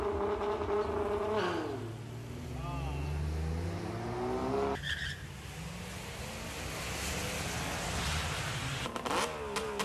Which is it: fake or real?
real